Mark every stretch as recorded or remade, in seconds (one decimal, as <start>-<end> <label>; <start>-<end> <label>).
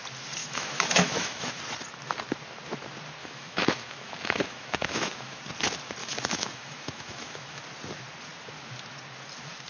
0.0-0.4 recorded; 0.4-1.6 remade; 1.6-3.2 recorded; 3.2-5.4 remade; 5.4-6.0 recorded; 6.0-7.6 remade; 7.6-9.7 recorded